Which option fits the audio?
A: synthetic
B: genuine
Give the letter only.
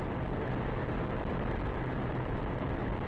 B